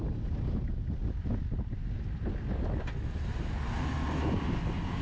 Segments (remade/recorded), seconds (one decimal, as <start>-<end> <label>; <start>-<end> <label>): 0.0-5.0 recorded